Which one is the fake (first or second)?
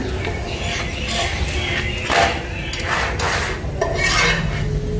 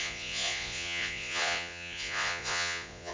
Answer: second